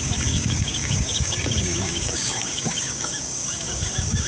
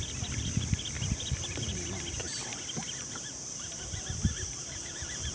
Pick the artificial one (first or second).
first